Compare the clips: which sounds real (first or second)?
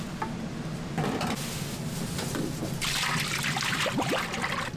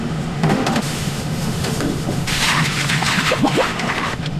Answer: first